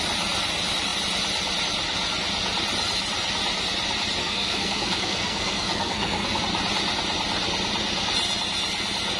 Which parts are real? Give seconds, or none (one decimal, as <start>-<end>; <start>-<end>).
0.0-4.2; 6.4-9.2